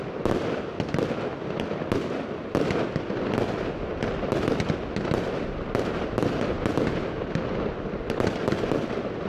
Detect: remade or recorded recorded